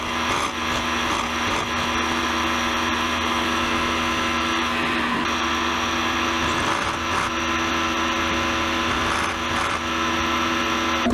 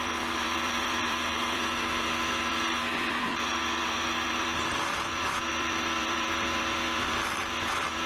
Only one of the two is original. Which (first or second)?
first